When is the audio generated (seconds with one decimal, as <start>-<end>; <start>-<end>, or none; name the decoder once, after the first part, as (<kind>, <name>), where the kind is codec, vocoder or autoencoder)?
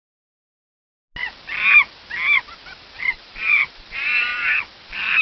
3.1-4.3 (vocoder, BigVGAN v2); 4.8-5.2